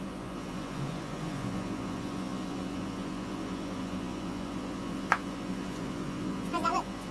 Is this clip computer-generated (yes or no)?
yes